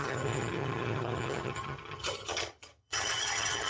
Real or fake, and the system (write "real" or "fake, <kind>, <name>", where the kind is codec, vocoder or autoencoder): fake, vocoder, HiFi-GAN